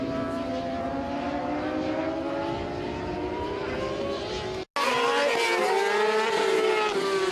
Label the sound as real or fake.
real